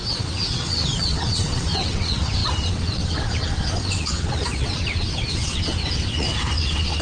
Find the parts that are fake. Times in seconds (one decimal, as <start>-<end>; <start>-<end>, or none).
0.0-7.0